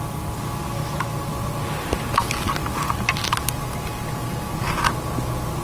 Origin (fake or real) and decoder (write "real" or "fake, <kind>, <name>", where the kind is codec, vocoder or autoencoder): real